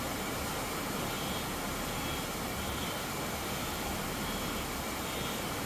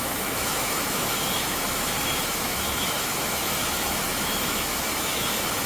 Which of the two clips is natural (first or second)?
first